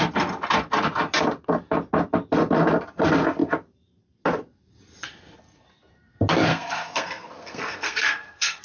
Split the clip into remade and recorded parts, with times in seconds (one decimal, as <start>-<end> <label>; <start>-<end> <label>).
0.0-6.5 recorded; 6.5-8.6 remade